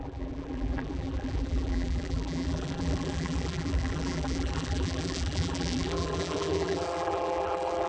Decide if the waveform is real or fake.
fake